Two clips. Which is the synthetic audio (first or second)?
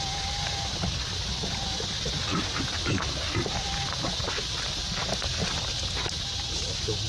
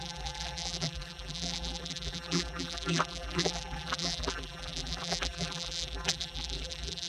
second